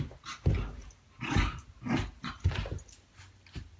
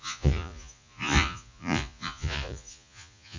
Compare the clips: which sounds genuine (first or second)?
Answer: first